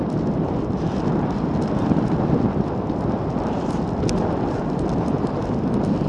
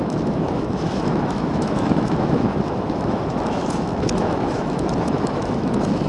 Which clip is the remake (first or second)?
second